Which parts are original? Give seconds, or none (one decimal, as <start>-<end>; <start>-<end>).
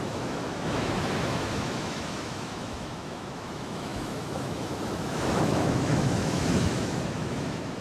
none